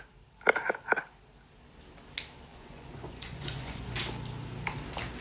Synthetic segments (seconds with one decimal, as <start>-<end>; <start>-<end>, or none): 2.5-4.0

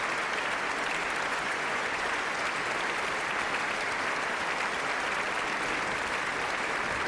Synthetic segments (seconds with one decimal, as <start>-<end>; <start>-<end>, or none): 1.3-2.4

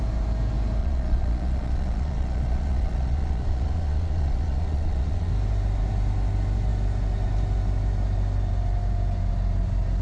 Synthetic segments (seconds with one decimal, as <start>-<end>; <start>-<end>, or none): 0.8-5.3